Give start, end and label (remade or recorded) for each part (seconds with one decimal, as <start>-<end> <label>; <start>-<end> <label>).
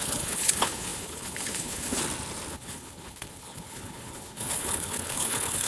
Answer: 0.0-2.0 remade; 2.0-2.5 recorded; 2.5-5.7 remade